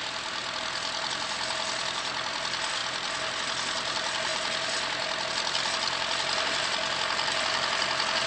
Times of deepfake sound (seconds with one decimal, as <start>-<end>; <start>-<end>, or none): none